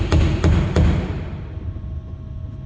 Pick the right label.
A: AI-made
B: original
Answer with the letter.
B